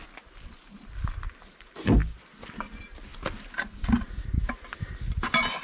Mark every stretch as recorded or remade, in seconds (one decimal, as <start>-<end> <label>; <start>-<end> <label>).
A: 0.0-5.6 recorded

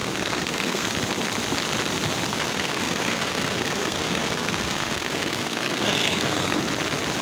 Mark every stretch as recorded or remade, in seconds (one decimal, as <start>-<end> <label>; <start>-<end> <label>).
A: 0.0-0.9 remade; 0.9-2.3 recorded; 2.3-6.6 remade; 6.6-7.2 recorded

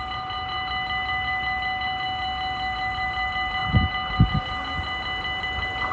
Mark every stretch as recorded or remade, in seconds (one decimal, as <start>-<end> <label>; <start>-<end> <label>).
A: 0.0-5.9 recorded

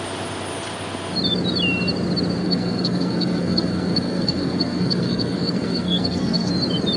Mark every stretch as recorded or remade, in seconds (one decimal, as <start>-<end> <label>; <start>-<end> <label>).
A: 0.0-2.4 recorded; 2.4-6.5 remade; 6.5-7.0 recorded